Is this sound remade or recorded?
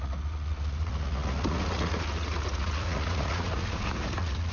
remade